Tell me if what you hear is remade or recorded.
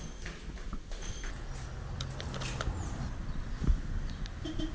recorded